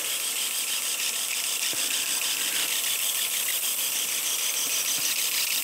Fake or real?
real